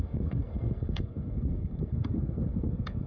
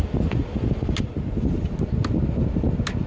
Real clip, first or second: second